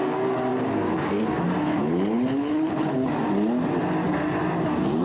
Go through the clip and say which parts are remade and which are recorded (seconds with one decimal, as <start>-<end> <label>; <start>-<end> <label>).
0.0-1.7 recorded; 1.7-3.1 remade; 3.1-5.0 recorded